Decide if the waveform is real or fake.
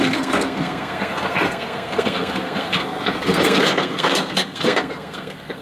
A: fake